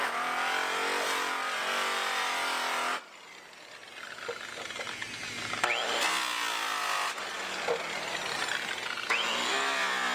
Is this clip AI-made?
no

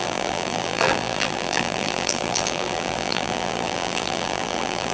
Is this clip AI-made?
yes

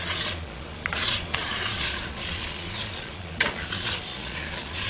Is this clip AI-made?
yes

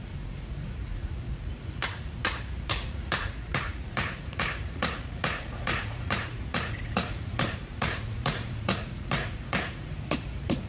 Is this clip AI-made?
yes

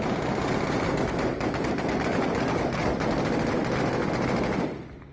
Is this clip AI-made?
no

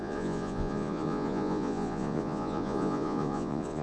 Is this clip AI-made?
yes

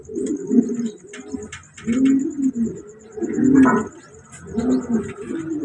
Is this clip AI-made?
no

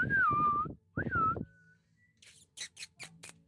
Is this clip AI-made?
no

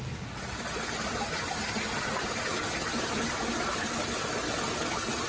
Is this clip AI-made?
no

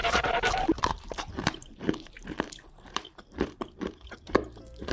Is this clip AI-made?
yes